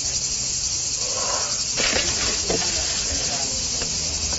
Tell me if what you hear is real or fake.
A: real